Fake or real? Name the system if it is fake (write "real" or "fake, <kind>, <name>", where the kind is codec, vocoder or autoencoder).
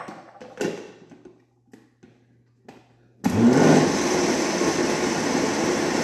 real